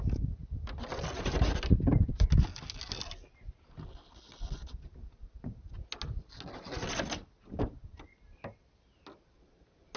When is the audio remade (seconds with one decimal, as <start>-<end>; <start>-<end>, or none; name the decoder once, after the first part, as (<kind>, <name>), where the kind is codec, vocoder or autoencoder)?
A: none